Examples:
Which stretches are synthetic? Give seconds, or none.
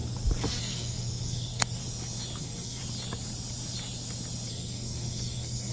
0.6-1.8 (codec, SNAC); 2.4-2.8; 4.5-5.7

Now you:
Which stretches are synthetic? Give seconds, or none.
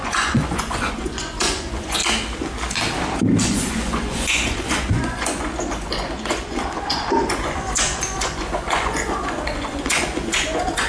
0.0-2.0 (vocoder, Vocos); 3.4-10.9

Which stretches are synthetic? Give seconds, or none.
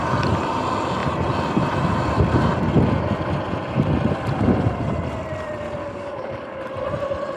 5.8-6.6 (codec, DAC)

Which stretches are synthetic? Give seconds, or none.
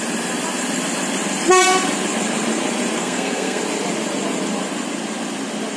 3.0-3.6 (codec, SNAC)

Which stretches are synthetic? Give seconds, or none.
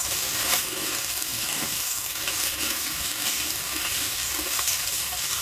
0.0-5.4 (codec, DAC)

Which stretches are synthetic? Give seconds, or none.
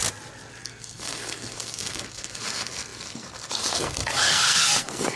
0.6-5.2 (codec, SNAC)